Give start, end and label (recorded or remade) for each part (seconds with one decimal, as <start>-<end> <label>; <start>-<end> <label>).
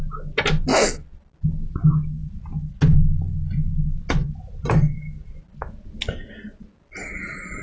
0.0-7.6 recorded